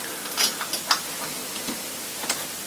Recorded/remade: recorded